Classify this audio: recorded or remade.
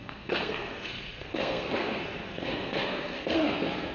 remade